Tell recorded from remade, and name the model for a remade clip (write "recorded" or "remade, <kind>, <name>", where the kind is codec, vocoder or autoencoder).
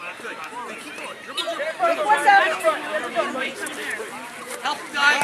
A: remade, vocoder, BigVGAN v2